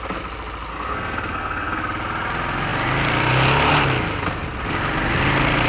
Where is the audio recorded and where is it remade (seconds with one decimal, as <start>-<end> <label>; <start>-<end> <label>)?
0.0-0.7 recorded; 0.7-1.8 remade; 1.8-5.7 recorded